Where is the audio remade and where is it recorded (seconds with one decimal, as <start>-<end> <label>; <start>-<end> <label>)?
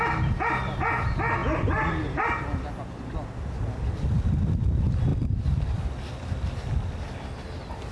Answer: 0.0-1.4 recorded; 1.4-2.3 remade; 2.3-5.1 recorded; 5.1-5.9 remade; 5.9-7.9 recorded